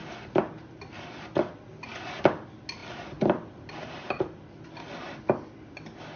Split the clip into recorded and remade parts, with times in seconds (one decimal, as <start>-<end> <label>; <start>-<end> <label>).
0.0-2.8 recorded; 2.8-4.2 remade; 4.2-6.2 recorded